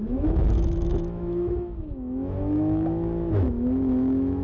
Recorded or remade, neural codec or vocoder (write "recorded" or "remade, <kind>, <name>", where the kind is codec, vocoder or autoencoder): remade, autoencoder, DAC-VAE